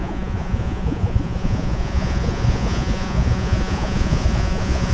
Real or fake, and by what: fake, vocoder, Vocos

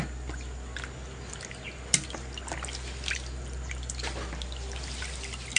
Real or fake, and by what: real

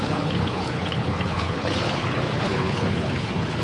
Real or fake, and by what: fake, codec, HILCodec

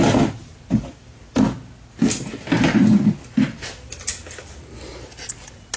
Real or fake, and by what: real